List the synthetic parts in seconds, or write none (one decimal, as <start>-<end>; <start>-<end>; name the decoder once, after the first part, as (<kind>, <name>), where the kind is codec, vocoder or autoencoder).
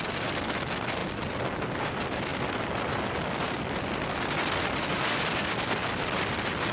none